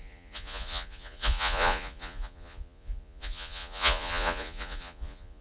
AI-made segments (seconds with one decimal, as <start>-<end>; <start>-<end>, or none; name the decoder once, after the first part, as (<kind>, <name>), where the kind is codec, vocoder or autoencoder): 0.0-5.4 (vocoder, Vocos)